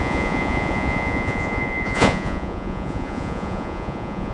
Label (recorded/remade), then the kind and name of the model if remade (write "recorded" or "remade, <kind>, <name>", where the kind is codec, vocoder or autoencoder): remade, vocoder, Vocos